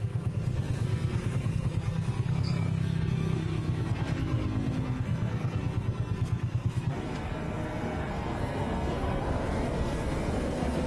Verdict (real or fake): fake